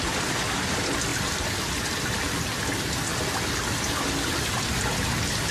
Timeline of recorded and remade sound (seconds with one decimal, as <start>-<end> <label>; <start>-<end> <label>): 0.0-5.5 recorded